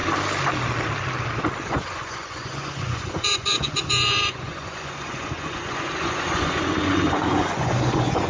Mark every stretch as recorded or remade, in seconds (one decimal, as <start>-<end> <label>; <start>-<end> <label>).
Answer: 0.0-1.7 recorded; 1.7-8.3 remade